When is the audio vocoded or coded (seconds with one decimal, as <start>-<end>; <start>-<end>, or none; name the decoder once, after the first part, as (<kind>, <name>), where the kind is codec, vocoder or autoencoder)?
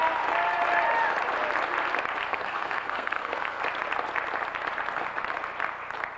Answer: 2.3-3.6 (codec, SNAC)